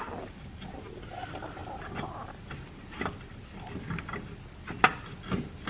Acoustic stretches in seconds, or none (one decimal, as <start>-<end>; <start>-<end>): 0.0-5.7